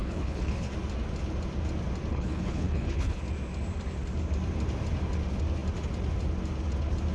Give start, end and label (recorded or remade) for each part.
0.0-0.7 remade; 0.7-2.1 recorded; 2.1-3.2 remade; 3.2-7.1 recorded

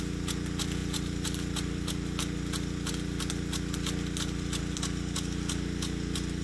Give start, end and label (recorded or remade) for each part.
0.0-6.4 recorded

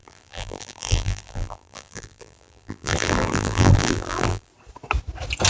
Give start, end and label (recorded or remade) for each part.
0.0-4.5 remade; 4.5-5.5 recorded

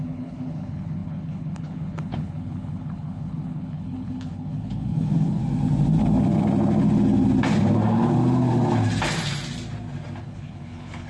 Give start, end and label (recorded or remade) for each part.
0.0-5.4 remade; 5.4-10.2 recorded; 10.2-11.1 remade

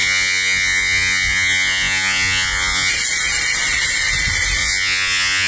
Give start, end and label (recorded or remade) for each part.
0.0-2.9 remade; 2.9-4.6 recorded; 4.6-5.5 remade

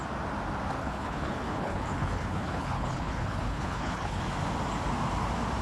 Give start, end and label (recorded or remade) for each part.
0.0-0.8 recorded; 0.8-4.2 remade; 4.2-5.6 recorded